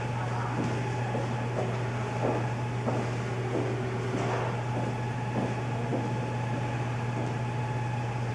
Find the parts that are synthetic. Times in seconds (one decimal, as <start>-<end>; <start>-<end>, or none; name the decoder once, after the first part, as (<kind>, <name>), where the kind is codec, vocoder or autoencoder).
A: none